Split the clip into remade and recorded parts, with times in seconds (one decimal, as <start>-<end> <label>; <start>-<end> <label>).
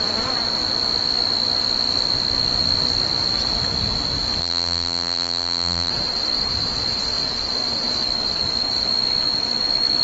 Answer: 0.0-4.4 recorded; 4.4-5.9 remade; 5.9-10.0 recorded